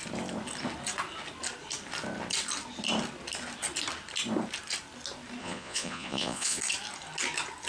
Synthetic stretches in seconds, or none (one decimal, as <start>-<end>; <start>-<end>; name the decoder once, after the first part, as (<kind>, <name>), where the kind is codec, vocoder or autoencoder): 5.4-6.6 (vocoder, Vocos)